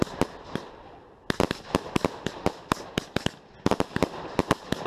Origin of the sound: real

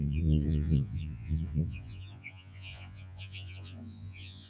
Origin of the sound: fake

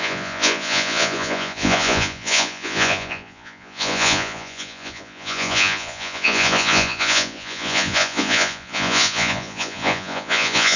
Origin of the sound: fake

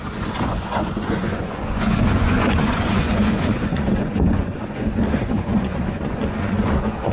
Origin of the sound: fake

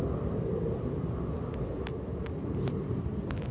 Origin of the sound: real